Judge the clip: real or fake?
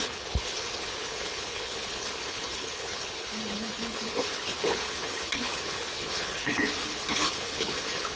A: fake